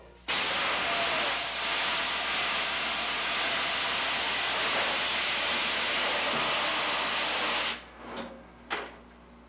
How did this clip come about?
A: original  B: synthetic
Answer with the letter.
A